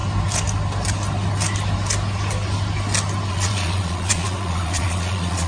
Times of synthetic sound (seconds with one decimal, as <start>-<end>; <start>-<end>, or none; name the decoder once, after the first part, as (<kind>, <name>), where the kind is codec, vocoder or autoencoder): 3.3-5.5 (vocoder, Vocos)